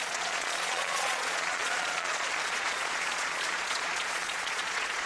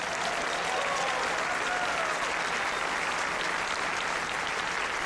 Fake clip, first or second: first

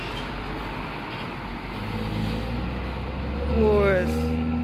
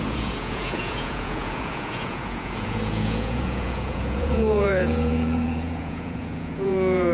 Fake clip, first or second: second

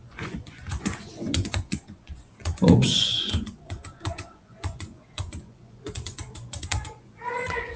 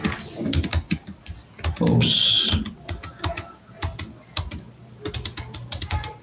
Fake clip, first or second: first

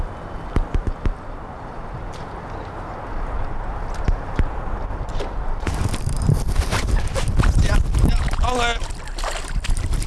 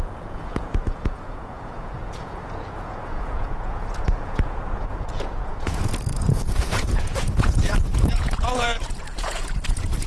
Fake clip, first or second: second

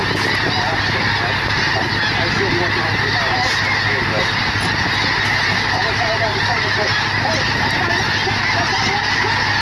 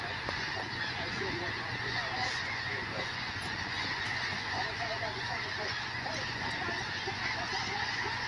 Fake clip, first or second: second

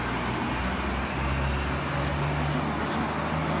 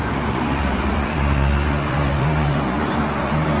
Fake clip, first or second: second